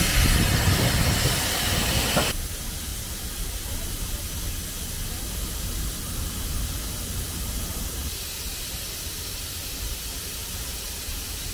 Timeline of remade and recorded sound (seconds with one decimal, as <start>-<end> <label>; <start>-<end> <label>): 0.0-11.5 recorded